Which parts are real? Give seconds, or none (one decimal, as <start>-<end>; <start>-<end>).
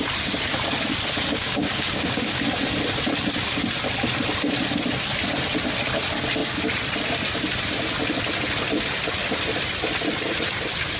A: 0.0-1.3; 2.4-11.0